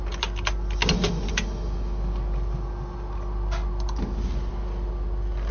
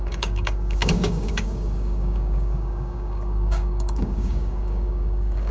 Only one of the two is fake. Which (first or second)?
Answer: second